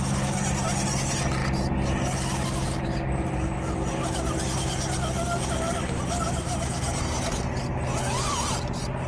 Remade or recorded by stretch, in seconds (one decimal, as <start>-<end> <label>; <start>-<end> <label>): 0.0-9.1 recorded